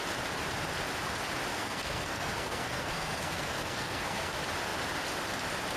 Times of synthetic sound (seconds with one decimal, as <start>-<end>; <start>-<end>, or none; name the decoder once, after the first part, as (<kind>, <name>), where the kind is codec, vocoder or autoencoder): 1.5-4.3 (codec, SNAC)